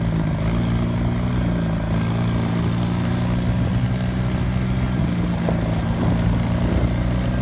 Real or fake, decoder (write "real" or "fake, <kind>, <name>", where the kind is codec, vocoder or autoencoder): real